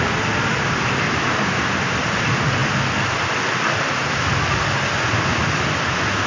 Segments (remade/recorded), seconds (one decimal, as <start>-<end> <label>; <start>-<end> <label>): 0.0-6.3 recorded